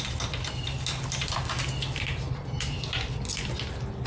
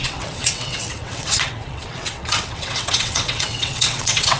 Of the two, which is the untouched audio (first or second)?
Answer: first